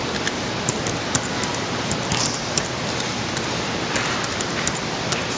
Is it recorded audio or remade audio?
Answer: recorded